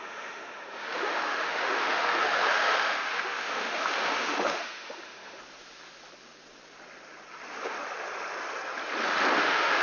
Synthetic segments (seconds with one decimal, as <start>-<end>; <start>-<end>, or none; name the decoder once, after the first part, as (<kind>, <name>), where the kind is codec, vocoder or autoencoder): 0.0-5.4 (autoencoder, DAC-VAE); 9.4-9.8